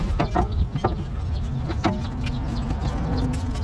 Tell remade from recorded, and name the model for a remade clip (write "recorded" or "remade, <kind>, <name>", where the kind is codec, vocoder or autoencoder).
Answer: recorded